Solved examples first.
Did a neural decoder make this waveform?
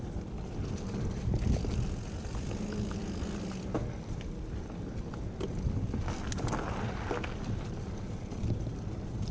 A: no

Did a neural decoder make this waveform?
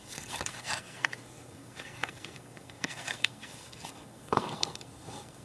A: yes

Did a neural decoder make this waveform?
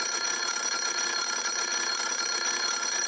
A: yes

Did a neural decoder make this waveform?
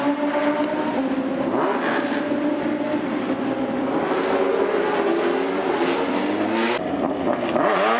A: no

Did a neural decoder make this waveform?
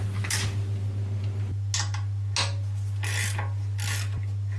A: no